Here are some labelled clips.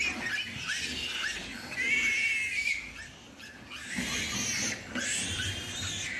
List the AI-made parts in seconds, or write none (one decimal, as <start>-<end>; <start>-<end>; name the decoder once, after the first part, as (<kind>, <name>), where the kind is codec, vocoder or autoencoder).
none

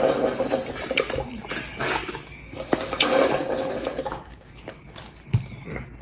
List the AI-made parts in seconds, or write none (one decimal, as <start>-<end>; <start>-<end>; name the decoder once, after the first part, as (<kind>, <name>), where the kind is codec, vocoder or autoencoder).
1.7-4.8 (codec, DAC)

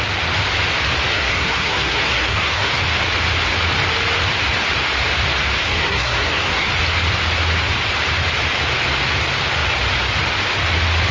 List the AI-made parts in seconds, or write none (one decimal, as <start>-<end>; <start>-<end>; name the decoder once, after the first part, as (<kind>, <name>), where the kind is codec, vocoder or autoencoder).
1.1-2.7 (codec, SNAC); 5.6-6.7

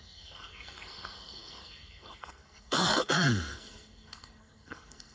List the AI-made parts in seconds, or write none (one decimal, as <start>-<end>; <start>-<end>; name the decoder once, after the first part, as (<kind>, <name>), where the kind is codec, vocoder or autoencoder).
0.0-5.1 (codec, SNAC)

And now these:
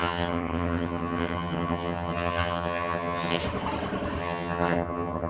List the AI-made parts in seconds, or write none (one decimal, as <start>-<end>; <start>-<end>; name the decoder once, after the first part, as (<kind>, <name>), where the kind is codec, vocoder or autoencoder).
0.0-3.4 (vocoder, HiFi-GAN); 4.2-5.3

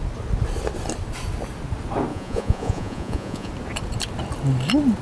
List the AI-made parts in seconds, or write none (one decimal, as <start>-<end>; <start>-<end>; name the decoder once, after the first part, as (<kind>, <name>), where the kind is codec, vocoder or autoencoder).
2.1-3.5 (vocoder, Vocos)